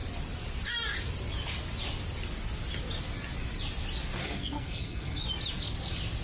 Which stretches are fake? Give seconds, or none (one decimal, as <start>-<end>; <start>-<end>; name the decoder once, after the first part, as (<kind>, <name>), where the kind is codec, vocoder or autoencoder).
4.2-5.2 (codec, SNAC)